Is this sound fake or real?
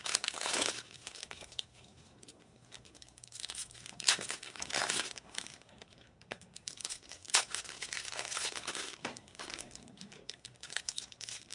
fake